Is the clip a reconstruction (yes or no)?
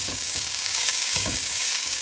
yes